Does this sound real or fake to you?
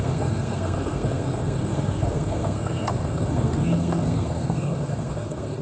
fake